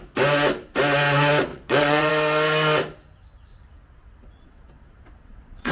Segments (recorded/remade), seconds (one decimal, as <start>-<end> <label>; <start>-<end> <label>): 0.0-1.5 recorded; 1.5-2.1 remade; 2.1-3.5 recorded; 3.5-5.7 remade

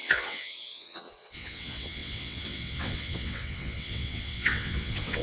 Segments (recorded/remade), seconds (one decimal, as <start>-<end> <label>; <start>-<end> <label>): 0.0-5.2 remade

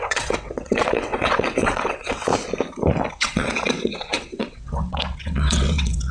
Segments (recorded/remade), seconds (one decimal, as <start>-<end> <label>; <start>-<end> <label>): 0.0-2.3 remade; 2.3-3.1 recorded; 3.1-6.1 remade

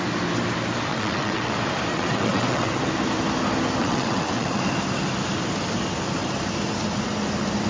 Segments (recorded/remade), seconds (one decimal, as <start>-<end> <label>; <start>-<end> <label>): 0.0-0.9 recorded; 0.9-1.5 remade; 1.5-1.9 recorded; 1.9-2.7 remade; 2.7-3.8 recorded; 3.8-4.6 remade; 4.6-7.7 recorded

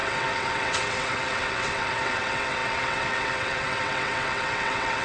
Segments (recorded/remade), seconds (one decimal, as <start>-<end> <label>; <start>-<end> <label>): 0.0-5.0 remade